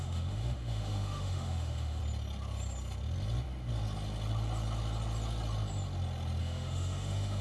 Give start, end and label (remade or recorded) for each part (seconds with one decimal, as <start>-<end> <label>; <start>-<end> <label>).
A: 0.0-2.0 remade; 2.0-6.4 recorded; 6.4-7.4 remade